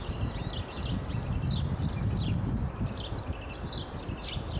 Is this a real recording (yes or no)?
yes